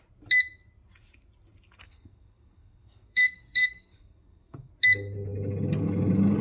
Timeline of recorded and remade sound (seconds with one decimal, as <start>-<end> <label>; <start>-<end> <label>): 0.0-1.8 recorded; 1.8-4.7 remade; 4.7-6.4 recorded